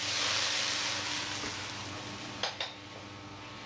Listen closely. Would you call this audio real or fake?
real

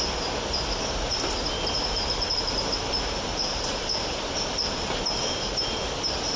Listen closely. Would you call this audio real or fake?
real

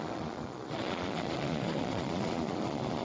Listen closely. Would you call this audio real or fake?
fake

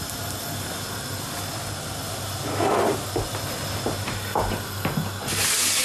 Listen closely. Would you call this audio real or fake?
real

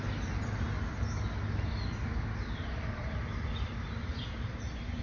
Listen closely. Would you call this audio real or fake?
real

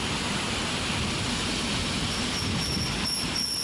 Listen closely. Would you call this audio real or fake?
real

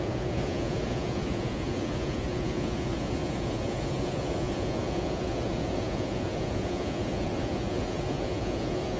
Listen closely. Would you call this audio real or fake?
fake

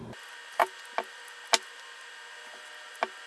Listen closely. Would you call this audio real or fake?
real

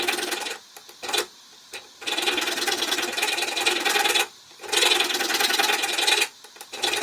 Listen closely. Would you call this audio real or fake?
real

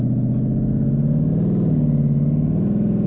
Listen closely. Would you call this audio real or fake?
real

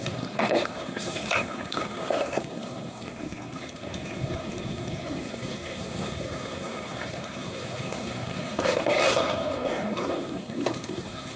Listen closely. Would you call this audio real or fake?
fake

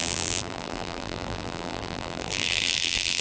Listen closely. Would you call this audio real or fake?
fake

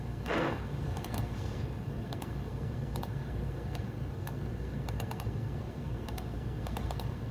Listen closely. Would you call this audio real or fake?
fake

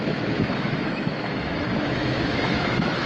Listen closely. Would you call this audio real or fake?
fake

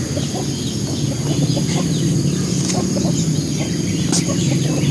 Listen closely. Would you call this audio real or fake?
real